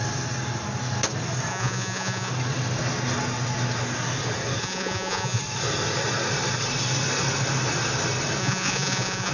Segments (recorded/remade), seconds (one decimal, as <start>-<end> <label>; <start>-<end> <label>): 0.0-1.5 recorded; 1.5-2.3 remade; 2.3-4.6 recorded; 4.6-5.4 remade; 5.4-8.4 recorded; 8.4-9.3 remade